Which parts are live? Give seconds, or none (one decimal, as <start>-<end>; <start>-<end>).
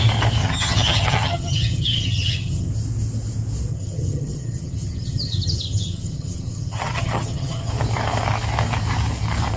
0.0-0.4; 2.7-3.7; 7.7-9.6